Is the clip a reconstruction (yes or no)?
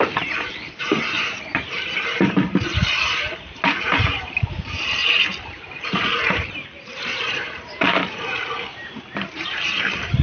yes